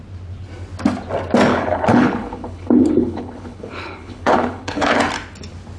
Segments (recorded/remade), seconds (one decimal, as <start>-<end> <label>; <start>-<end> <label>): 0.0-1.5 recorded; 1.5-5.0 remade; 5.0-5.8 recorded